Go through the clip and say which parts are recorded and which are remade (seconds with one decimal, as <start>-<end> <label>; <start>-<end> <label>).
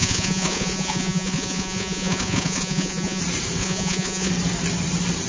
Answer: 0.0-3.2 remade; 3.2-3.6 recorded; 3.6-4.3 remade; 4.3-5.3 recorded